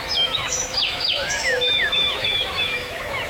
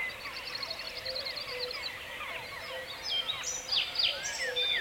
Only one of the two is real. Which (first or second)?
second